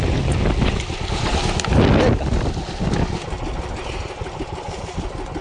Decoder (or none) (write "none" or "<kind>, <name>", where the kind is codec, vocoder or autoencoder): none